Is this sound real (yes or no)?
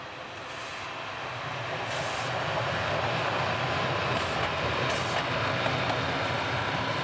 yes